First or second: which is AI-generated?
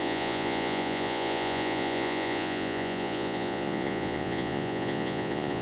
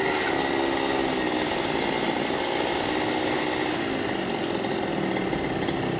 first